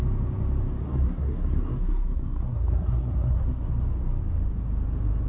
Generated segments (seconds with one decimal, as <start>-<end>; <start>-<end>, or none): 0.8-3.7